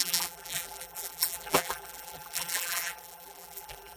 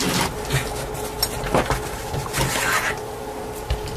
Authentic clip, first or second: second